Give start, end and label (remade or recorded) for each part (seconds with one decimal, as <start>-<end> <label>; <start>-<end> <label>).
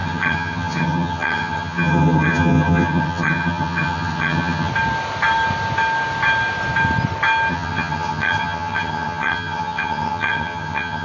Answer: 0.0-4.7 remade; 4.7-7.5 recorded; 7.5-11.0 remade